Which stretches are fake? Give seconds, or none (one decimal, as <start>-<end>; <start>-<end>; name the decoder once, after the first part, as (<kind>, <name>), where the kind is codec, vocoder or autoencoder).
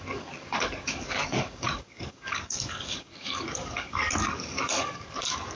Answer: 0.0-5.6 (codec, DAC)